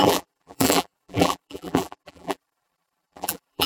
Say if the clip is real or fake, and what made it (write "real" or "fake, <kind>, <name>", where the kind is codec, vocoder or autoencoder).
fake, vocoder, BigVGAN v2